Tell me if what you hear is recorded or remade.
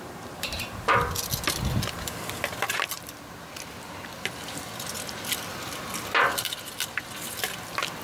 recorded